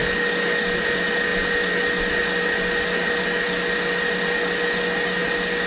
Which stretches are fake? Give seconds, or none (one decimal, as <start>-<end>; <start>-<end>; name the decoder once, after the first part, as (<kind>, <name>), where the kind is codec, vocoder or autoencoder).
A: none